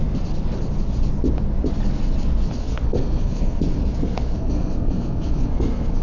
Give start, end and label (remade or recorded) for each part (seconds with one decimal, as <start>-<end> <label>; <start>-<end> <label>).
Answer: 0.0-2.6 recorded; 2.6-6.0 remade